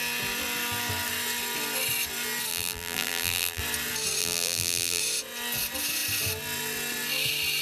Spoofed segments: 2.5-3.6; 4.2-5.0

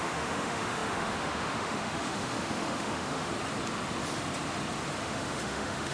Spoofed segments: 0.0-3.3; 5.0-5.9

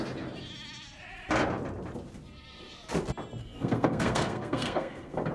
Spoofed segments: 3.4-5.3

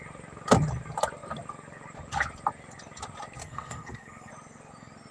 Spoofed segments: 3.4-4.3

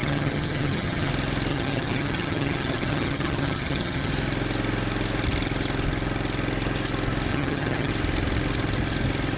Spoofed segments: 0.0-1.1; 1.5-4.1; 7.3-7.9

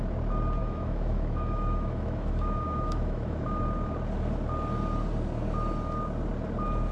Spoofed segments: 0.6-3.6